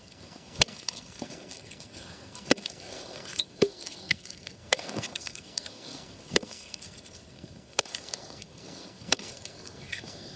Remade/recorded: remade